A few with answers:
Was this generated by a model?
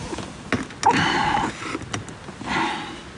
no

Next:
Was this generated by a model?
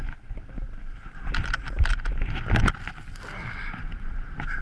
no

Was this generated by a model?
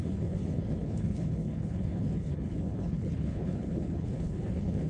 yes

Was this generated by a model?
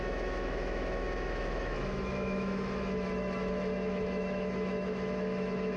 yes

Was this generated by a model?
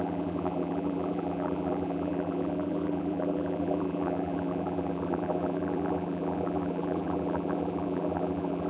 yes